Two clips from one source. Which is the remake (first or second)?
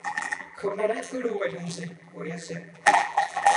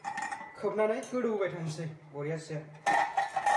first